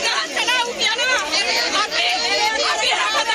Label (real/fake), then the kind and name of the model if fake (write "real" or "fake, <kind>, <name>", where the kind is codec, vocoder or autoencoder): real